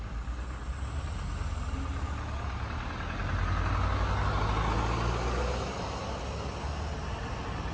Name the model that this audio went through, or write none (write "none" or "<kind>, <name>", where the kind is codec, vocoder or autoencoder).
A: none